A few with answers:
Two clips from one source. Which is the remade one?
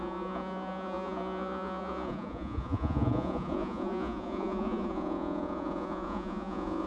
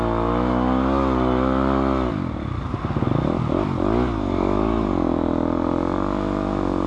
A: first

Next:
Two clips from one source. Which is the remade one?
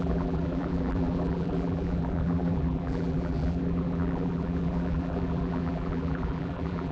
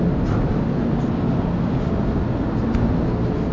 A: first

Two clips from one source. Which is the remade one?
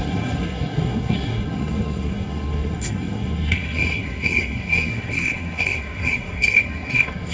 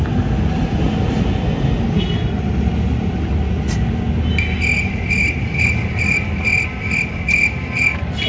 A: first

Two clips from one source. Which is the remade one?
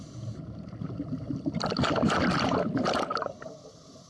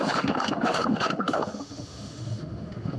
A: second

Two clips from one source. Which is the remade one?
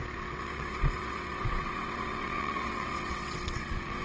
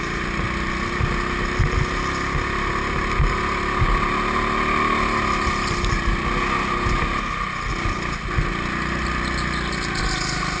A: first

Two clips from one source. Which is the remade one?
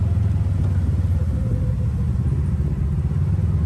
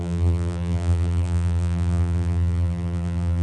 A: second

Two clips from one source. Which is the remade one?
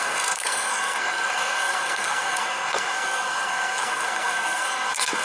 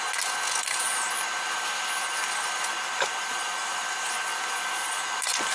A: first